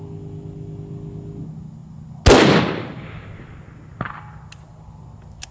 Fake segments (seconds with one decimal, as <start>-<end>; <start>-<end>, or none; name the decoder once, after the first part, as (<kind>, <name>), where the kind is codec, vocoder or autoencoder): none